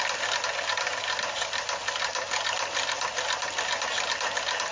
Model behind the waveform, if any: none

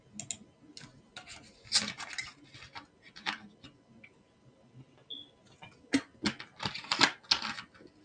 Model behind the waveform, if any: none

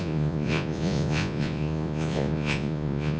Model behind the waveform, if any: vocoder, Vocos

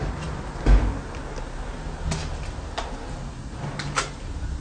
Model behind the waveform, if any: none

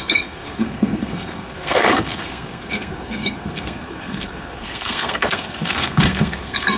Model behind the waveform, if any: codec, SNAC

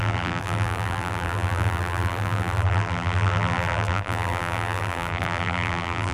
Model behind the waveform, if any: vocoder, BigVGAN v2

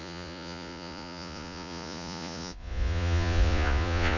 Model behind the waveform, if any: vocoder, Vocos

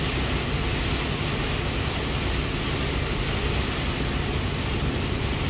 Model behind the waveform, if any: none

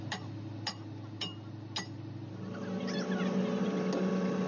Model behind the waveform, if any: none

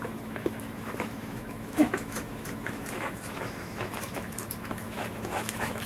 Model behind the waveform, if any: autoencoder, DAC-VAE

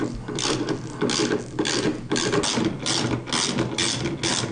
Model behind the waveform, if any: none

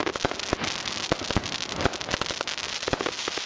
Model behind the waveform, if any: none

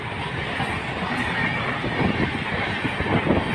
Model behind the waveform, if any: none